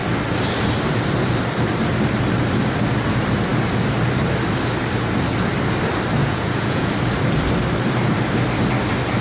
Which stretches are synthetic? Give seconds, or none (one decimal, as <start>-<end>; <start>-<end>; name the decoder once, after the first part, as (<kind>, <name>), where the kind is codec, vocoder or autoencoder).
6.2-6.9 (vocoder, Vocos)